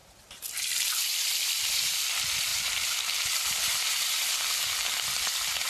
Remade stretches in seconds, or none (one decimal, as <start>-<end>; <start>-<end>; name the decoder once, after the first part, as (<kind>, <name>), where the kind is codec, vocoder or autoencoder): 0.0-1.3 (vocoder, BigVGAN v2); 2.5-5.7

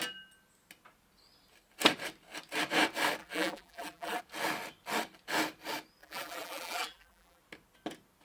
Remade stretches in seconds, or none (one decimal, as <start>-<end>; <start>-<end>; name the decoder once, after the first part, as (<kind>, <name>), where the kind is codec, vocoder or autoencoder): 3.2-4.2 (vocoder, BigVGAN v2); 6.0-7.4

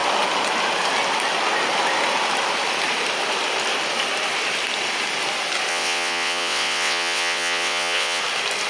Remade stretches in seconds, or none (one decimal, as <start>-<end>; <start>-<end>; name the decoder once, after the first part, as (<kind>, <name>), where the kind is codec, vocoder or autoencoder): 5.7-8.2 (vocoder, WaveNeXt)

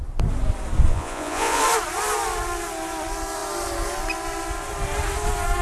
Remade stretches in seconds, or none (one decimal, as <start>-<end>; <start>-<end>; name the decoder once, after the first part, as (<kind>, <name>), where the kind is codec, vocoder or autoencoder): 0.9-1.6 (vocoder, Vocos)

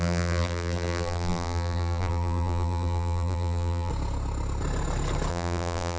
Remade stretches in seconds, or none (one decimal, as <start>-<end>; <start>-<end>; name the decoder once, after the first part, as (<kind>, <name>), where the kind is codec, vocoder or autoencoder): 0.0-3.9 (vocoder, BigVGAN v2); 5.3-6.0

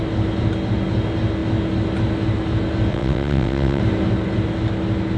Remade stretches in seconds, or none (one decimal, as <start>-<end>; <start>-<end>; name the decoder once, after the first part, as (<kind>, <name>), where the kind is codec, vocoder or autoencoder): 2.9-3.8 (vocoder, WaveNeXt)